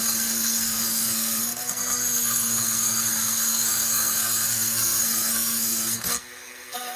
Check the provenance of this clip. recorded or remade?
remade